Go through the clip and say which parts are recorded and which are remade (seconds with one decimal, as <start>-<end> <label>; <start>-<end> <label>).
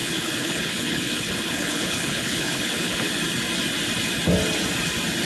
0.0-3.1 remade; 3.1-5.2 recorded